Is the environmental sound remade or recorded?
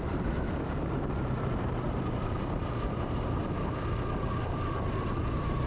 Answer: remade